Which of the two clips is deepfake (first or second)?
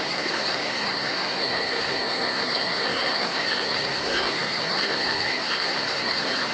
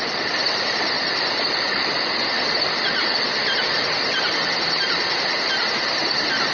first